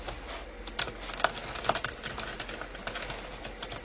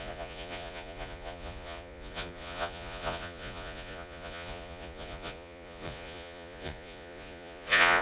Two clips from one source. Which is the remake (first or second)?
second